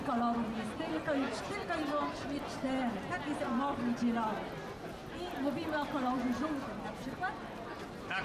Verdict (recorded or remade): recorded